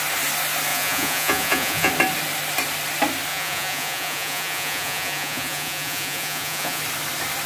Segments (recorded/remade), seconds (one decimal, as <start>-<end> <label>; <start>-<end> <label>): 0.0-0.7 recorded; 0.7-1.9 remade; 1.9-3.3 recorded; 3.3-6.8 remade; 6.8-7.5 recorded